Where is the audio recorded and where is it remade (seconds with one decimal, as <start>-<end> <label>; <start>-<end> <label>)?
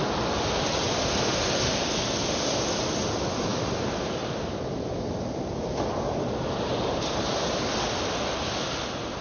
0.0-9.2 recorded